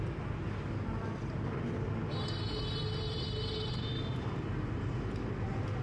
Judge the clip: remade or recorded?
recorded